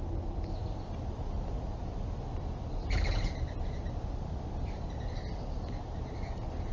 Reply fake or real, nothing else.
real